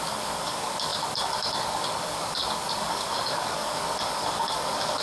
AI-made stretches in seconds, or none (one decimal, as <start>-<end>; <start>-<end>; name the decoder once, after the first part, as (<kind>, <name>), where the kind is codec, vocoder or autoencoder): 0.0-5.0 (codec, DAC)